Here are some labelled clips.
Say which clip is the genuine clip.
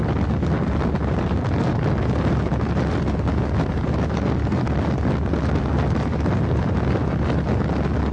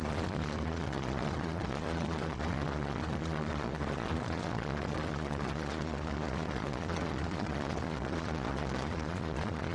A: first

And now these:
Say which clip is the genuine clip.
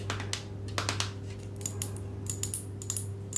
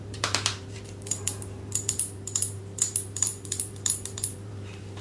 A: first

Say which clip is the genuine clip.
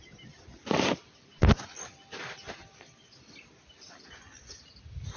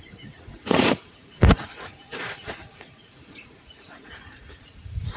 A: first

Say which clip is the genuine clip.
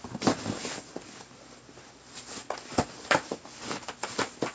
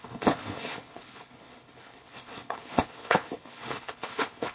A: first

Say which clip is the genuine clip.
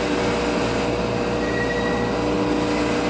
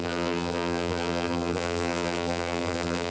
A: first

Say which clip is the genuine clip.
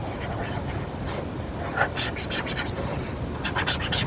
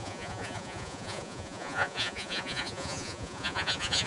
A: first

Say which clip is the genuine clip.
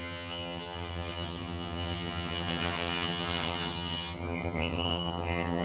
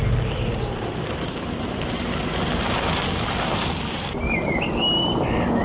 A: second